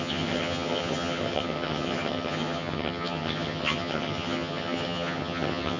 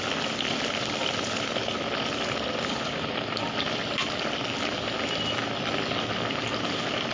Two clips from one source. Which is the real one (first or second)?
second